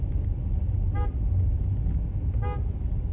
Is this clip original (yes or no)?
yes